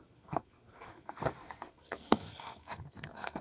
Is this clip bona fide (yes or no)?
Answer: no